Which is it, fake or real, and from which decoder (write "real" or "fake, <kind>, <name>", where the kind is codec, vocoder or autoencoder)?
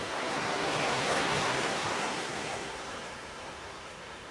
fake, codec, SNAC